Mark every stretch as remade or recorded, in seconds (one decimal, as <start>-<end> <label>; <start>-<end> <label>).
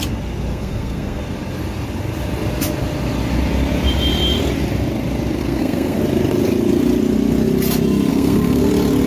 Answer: 0.0-0.5 recorded; 0.5-1.2 remade; 1.2-5.4 recorded; 5.4-6.0 remade; 6.0-8.1 recorded; 8.1-8.7 remade; 8.7-9.1 recorded